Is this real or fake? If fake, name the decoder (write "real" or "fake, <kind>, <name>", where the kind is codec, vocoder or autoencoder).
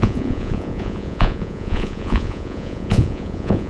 fake, vocoder, Vocos